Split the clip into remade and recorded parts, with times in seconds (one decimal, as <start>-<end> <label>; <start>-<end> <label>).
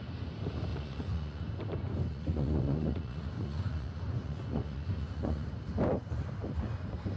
0.0-0.7 recorded; 0.7-1.4 remade; 1.4-2.1 recorded; 2.1-5.5 remade; 5.5-7.2 recorded